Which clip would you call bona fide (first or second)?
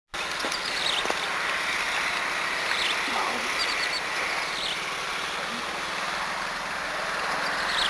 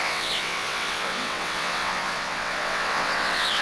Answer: first